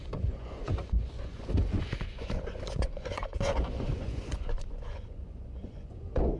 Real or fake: fake